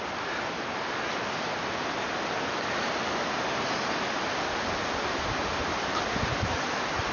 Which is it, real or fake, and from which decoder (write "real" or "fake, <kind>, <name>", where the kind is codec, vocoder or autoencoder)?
real